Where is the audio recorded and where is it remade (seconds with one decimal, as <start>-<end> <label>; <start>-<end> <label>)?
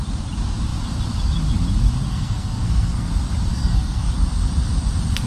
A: 0.0-2.1 recorded; 2.1-3.1 remade; 3.1-3.5 recorded; 3.5-4.1 remade; 4.1-5.3 recorded